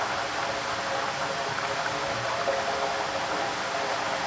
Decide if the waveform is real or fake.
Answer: real